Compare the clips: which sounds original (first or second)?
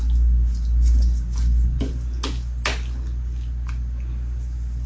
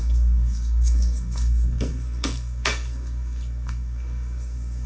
first